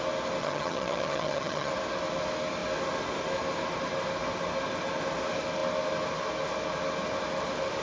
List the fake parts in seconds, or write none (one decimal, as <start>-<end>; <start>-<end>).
0.4-1.7